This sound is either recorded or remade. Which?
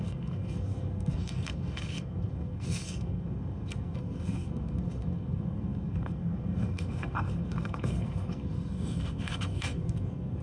remade